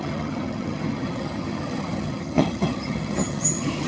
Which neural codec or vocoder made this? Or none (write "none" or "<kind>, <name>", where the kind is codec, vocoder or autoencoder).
vocoder, HiFi-GAN